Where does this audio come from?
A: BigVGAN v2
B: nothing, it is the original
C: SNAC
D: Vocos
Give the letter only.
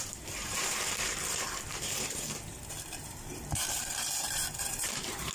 A